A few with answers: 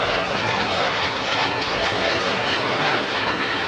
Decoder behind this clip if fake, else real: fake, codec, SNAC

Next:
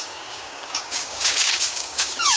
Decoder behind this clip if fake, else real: fake, codec, DAC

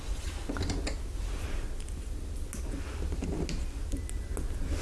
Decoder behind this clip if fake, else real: real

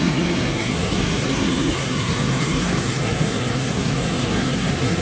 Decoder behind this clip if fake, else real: fake, codec, SNAC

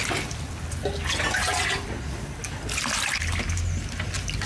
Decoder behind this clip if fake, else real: real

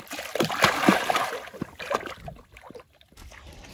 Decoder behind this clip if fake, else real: real